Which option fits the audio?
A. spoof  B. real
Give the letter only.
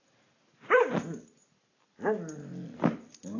B